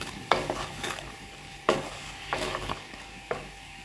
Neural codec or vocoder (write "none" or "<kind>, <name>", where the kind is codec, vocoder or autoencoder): codec, DAC